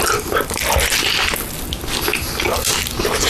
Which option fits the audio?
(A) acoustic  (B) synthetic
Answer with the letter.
A